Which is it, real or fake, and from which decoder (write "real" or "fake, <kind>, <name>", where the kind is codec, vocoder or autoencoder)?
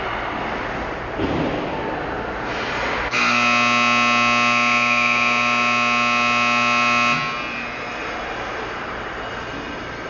real